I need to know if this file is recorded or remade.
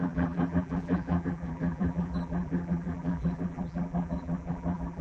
remade